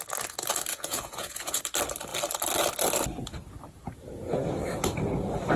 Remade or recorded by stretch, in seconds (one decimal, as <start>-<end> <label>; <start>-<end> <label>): 0.0-0.7 recorded; 0.7-1.6 remade; 1.6-5.6 recorded